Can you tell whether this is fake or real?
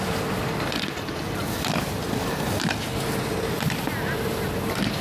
real